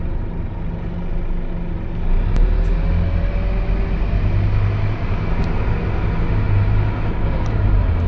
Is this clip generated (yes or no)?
no